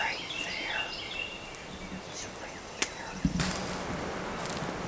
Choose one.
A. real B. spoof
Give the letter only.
A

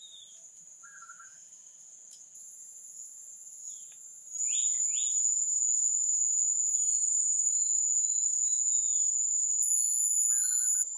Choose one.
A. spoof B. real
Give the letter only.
A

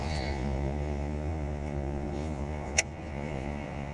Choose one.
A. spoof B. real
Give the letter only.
A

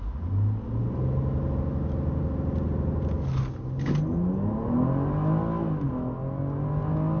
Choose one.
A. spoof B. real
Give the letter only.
B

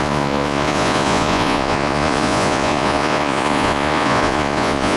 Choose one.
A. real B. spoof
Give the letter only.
B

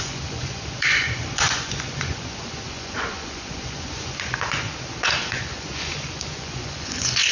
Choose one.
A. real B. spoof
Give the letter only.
B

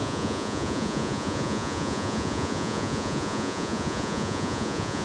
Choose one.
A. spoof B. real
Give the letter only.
A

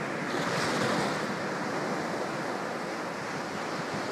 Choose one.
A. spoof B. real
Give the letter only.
B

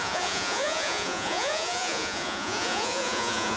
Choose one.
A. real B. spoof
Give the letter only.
B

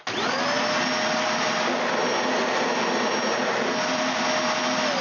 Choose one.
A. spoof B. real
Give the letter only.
B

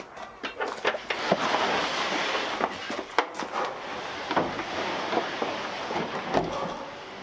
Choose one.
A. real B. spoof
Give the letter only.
A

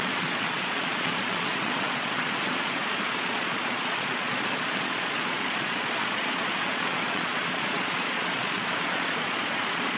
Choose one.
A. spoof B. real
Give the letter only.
A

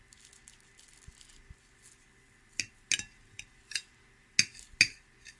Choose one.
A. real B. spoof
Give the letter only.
A